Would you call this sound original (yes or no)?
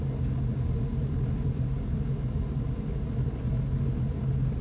yes